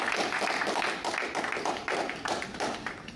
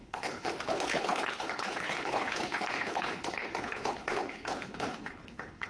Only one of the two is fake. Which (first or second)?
second